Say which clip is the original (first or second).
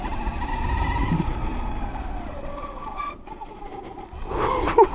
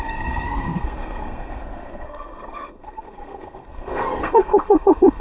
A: first